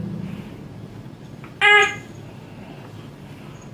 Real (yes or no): yes